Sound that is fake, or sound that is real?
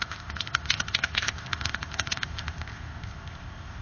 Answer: fake